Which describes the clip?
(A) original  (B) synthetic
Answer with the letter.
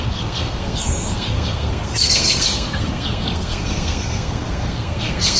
B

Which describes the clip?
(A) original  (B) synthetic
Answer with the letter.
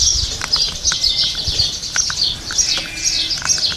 A